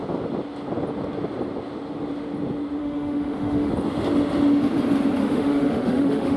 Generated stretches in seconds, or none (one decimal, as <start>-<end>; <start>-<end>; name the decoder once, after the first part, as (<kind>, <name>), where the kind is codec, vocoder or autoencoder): 2.8-3.7 (autoencoder, DAC-VAE); 5.2-6.4